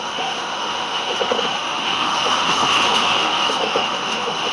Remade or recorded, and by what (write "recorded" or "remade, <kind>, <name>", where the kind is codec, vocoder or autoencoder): remade, autoencoder, DAC-VAE